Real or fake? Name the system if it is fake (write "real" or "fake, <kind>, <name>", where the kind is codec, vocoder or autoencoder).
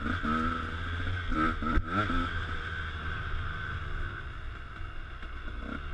real